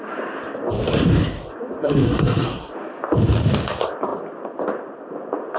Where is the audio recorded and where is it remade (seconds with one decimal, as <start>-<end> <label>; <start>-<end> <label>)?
0.0-1.8 recorded; 1.8-2.7 remade; 2.7-5.6 recorded